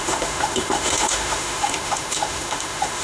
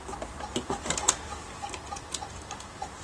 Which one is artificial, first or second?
first